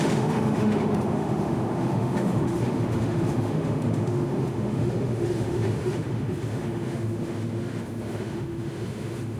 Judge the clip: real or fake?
fake